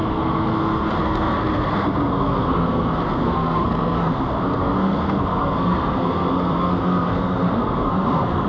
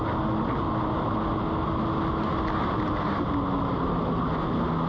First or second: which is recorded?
second